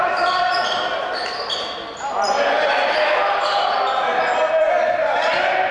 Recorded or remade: recorded